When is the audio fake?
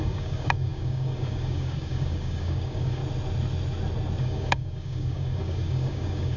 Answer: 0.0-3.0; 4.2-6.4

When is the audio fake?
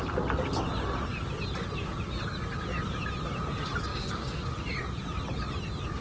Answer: 3.9-4.4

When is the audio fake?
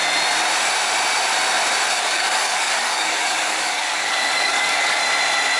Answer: 1.9-5.0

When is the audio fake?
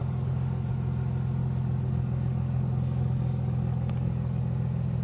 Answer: 0.0-0.7; 1.4-4.4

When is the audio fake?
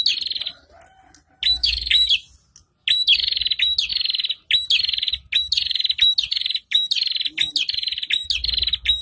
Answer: 1.6-2.1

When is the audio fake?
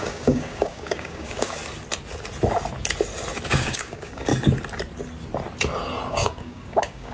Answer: 0.0-1.6; 3.5-4.3; 6.1-7.1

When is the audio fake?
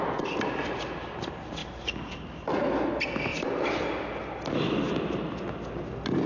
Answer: none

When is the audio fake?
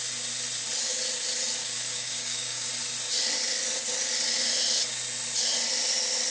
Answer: 1.6-2.7